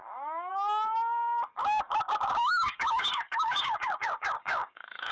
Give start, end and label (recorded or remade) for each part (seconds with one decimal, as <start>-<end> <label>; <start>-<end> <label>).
0.0-0.5 remade; 0.5-1.6 recorded; 1.6-5.1 remade